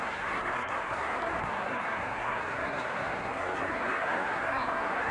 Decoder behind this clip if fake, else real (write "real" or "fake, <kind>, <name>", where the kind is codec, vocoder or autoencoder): fake, codec, SNAC